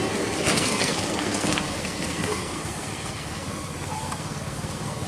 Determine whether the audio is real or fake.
fake